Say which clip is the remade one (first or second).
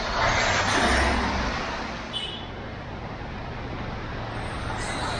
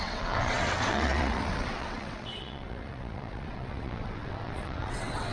second